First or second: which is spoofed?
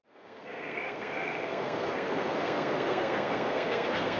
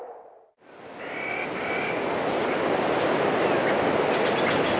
first